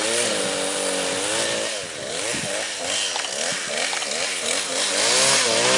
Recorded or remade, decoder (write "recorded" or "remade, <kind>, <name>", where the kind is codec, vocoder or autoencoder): recorded